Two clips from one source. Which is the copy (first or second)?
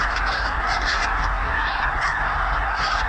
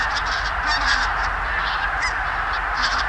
first